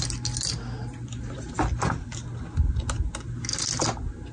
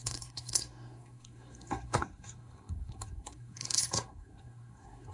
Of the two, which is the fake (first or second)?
second